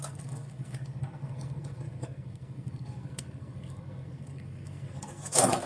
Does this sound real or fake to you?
fake